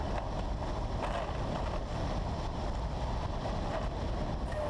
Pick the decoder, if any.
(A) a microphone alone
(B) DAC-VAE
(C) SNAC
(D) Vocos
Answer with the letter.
A